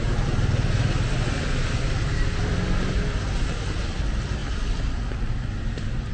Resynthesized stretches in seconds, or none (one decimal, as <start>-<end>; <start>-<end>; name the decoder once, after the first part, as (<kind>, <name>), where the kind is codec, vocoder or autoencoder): none